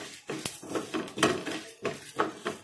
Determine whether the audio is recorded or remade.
recorded